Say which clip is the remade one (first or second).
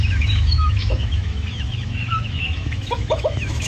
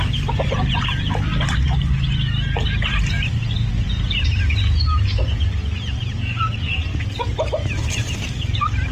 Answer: first